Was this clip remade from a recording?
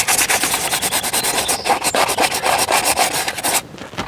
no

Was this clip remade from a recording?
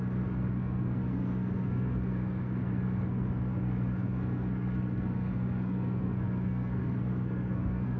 yes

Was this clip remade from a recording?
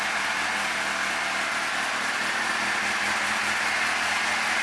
no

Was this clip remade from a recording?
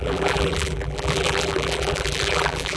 yes